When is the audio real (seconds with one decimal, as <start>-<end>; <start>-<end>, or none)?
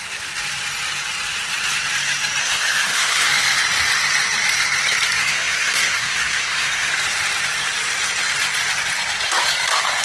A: 0.0-2.4; 3.3-5.2; 6.9-10.0